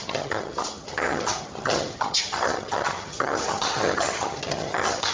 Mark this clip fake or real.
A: fake